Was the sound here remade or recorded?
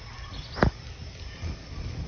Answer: recorded